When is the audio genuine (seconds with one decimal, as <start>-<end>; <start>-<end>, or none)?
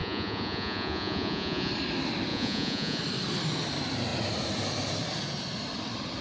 1.7-2.3; 3.0-6.2